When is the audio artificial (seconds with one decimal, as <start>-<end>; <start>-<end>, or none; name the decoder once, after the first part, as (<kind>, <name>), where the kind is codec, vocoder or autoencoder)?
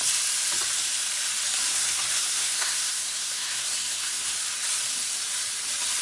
1.7-4.3 (codec, SNAC)